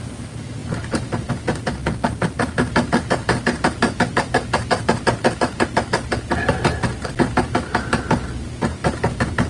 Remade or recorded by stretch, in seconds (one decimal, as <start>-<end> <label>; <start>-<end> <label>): 0.0-9.5 recorded